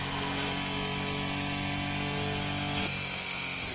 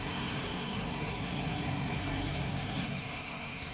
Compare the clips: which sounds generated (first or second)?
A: second